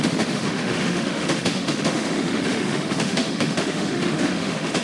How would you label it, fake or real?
fake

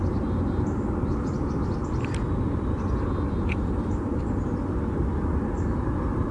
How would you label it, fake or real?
real